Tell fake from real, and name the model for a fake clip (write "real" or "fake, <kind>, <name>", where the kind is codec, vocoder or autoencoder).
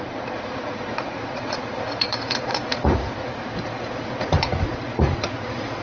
fake, vocoder, Vocos